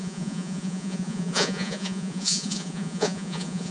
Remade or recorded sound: remade